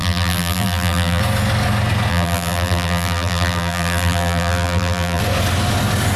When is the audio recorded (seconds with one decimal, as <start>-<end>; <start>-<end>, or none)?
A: 1.2-2.1; 5.2-6.2